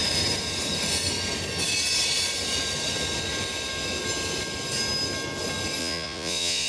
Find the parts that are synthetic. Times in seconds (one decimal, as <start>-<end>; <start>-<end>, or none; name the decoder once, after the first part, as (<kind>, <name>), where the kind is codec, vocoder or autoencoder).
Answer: 5.8-6.7 (vocoder, Vocos)